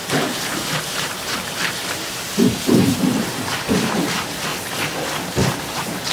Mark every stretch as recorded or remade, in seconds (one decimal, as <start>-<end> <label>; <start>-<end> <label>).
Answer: 0.0-4.5 remade; 4.5-5.6 recorded; 5.6-6.1 remade